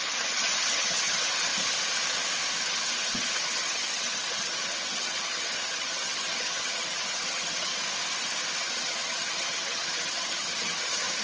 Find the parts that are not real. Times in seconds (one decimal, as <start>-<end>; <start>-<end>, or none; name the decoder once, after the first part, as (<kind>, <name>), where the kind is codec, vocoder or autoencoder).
0.0-1.5 (vocoder, HiFi-GAN); 2.6-7.7; 8.6-11.2